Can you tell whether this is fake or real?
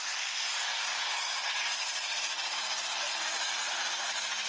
real